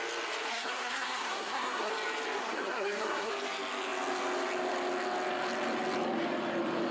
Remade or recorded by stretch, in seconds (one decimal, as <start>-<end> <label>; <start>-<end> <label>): 0.0-0.5 recorded; 0.5-1.9 remade; 1.9-2.4 recorded; 2.4-3.3 remade; 3.3-6.9 recorded